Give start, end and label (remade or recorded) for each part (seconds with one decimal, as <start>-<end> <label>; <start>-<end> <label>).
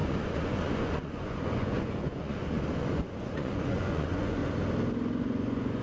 0.0-4.4 remade; 4.4-5.2 recorded; 5.2-5.8 remade